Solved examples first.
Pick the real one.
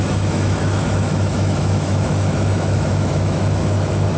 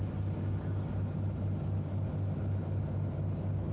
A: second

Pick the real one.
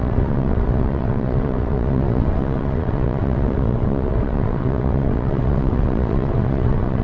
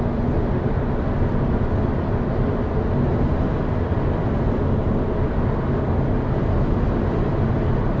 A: second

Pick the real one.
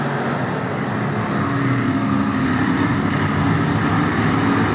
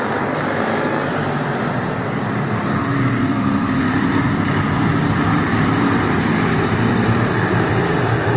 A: first